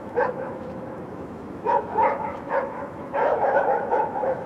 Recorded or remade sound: remade